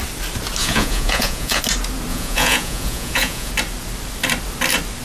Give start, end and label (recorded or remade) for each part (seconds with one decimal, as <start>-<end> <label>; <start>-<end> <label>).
0.0-0.6 recorded; 0.6-1.6 remade; 1.6-2.1 recorded; 2.1-3.5 remade; 3.5-5.0 recorded